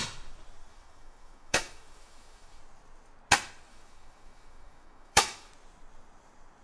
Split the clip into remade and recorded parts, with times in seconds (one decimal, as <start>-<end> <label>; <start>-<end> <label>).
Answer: 0.0-0.7 recorded; 0.7-2.6 remade; 2.6-3.7 recorded; 3.7-5.5 remade; 5.5-6.6 recorded